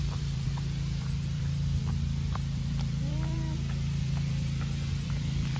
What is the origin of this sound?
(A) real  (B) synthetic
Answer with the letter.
B